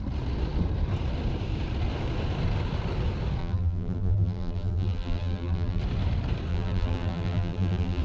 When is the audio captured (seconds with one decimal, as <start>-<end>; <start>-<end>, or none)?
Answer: 0.0-3.4; 5.8-6.5